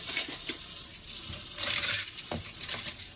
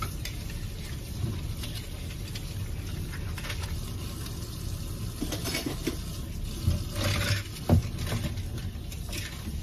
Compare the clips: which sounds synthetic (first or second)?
first